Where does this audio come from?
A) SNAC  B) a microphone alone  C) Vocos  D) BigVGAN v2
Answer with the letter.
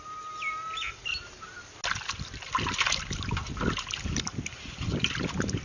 B